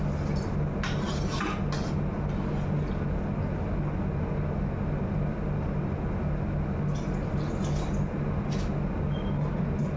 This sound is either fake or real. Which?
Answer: real